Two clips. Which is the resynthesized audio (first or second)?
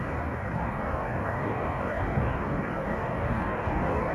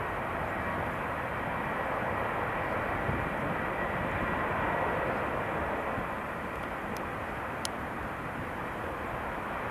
first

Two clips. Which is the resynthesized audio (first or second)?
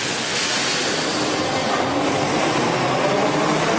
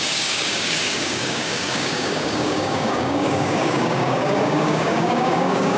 second